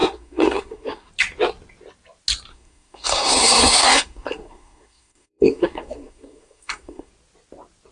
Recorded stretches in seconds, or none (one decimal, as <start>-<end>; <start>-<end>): 1.1-2.5; 7.1-7.9